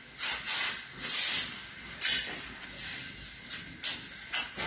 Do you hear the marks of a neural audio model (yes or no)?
no